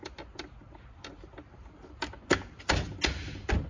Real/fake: real